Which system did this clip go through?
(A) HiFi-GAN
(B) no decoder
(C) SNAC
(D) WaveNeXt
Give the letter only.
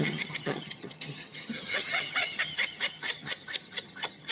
A